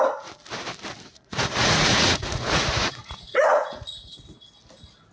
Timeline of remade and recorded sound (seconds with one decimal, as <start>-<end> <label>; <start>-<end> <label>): 0.0-1.1 recorded; 1.1-4.2 remade; 4.2-5.1 recorded